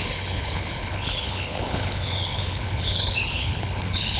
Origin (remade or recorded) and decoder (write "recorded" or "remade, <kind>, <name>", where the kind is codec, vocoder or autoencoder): remade, codec, HILCodec